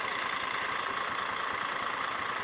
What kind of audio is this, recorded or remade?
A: remade